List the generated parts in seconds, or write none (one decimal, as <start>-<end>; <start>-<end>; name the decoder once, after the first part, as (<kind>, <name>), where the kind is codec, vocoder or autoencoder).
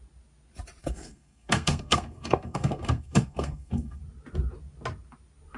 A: 0.8-4.0 (codec, SNAC)